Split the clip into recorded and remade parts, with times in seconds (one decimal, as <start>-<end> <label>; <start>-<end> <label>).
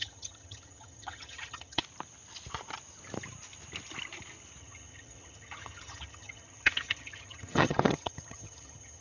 0.0-1.8 remade; 1.8-4.6 recorded; 4.6-9.0 remade